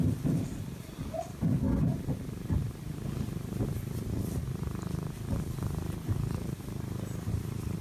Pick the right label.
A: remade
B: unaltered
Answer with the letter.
B